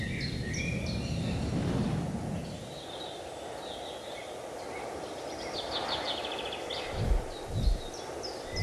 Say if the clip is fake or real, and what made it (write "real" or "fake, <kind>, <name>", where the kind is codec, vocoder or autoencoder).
real